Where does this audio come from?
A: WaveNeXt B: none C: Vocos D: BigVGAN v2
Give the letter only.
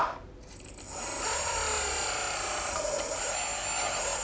B